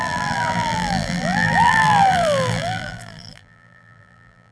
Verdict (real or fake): fake